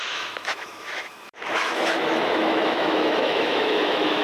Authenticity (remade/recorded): remade